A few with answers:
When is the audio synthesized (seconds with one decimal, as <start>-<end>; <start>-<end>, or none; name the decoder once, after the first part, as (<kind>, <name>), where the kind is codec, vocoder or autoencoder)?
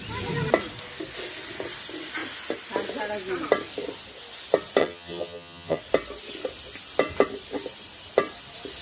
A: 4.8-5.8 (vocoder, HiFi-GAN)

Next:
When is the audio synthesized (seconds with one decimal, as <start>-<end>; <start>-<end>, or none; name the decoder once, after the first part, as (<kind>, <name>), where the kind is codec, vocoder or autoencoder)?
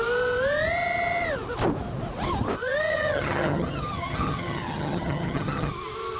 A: 2.9-5.7 (vocoder, HiFi-GAN)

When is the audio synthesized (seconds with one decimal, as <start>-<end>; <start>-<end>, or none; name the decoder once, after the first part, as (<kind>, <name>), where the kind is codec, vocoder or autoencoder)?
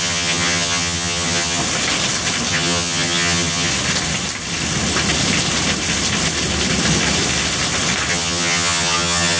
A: 0.0-1.6 (vocoder, HiFi-GAN); 2.5-3.7; 8.1-9.4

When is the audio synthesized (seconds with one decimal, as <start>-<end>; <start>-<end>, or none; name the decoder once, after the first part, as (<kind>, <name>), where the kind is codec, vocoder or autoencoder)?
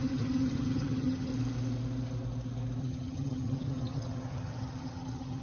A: 0.0-1.3 (vocoder, HiFi-GAN); 2.8-5.4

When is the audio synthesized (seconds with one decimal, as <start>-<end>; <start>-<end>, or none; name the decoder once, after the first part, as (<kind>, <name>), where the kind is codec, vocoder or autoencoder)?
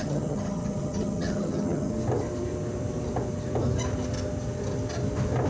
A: 0.0-1.9 (vocoder, HiFi-GAN)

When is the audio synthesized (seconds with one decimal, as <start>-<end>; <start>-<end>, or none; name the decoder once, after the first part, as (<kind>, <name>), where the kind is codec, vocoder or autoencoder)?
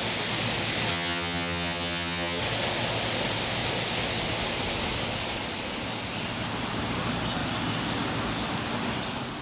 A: 0.9-2.4 (vocoder, HiFi-GAN)